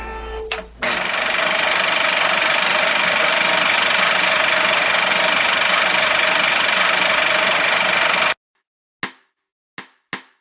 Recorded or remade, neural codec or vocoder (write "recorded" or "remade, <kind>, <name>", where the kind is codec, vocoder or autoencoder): recorded